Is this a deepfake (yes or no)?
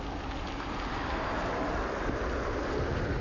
no